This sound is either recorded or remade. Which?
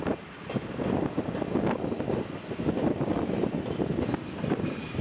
recorded